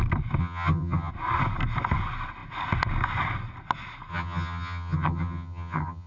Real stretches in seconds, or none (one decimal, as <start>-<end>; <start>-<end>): 0.0-0.4; 1.1-4.1